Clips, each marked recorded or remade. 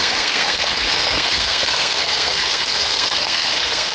remade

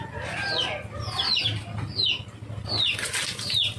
recorded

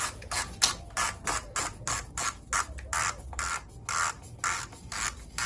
recorded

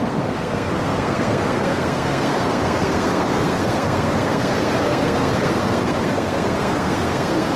remade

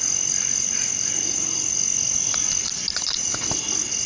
recorded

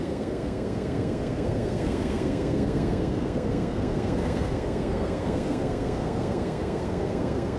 remade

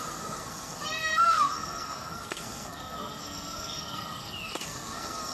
remade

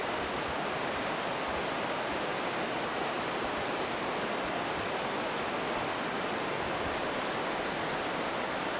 recorded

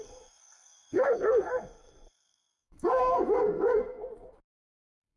remade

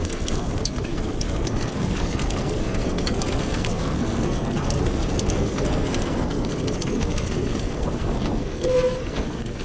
remade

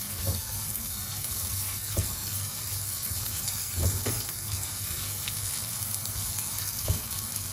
remade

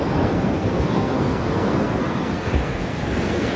remade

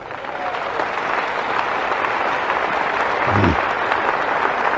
recorded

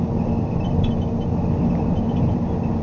recorded